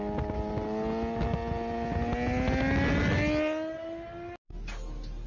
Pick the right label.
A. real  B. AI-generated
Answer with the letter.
A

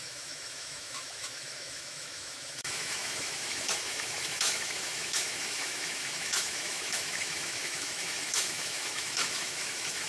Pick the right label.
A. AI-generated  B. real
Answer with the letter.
A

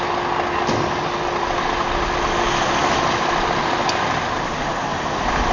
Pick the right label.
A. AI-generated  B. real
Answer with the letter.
B